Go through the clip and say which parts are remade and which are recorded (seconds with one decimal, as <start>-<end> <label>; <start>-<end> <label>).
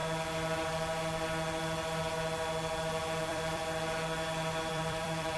0.0-3.2 recorded; 3.2-3.6 remade; 3.6-4.7 recorded; 4.7-5.4 remade